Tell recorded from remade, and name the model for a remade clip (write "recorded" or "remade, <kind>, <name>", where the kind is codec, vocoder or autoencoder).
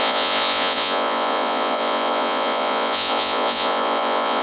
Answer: remade, vocoder, Vocos